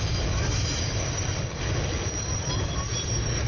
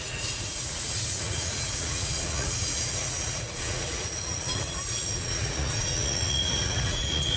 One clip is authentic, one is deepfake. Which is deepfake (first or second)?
second